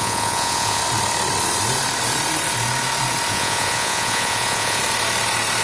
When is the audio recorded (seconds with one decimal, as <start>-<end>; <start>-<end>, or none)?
0.8-3.3; 4.8-5.6

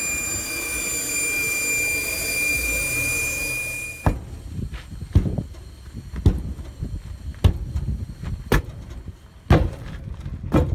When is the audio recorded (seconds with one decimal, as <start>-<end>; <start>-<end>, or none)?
0.0-10.7

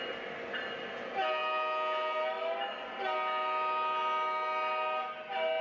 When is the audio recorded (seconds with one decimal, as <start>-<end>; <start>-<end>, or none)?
0.0-5.6